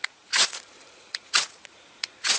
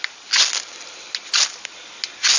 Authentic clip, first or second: second